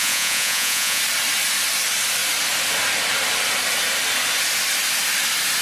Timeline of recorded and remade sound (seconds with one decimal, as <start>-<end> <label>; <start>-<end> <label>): 0.0-1.0 remade; 1.0-5.6 recorded